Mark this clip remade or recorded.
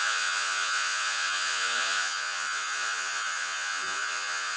remade